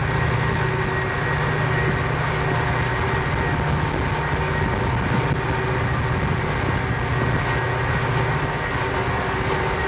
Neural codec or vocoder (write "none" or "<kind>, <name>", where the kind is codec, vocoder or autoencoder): none